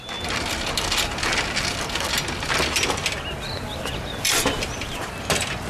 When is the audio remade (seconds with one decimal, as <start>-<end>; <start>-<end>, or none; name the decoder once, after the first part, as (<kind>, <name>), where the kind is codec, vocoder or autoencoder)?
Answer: 3.7-5.1 (vocoder, BigVGAN v2)